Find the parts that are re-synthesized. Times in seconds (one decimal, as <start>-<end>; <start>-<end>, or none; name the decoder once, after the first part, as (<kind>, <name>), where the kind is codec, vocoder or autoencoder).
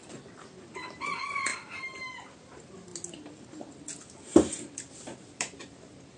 0.0-2.9 (vocoder, BigVGAN v2); 4.2-6.2